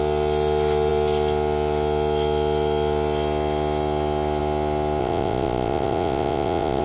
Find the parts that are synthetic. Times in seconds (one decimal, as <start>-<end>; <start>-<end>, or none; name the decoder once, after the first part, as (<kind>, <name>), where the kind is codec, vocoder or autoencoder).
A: 5.0-6.8 (vocoder, Vocos)